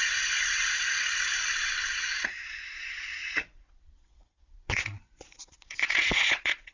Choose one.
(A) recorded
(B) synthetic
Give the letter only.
B